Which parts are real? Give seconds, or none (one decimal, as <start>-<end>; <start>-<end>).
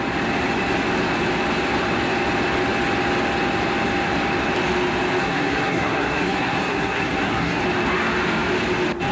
0.0-5.2; 7.6-9.1